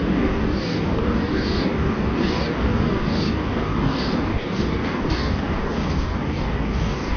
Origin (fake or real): fake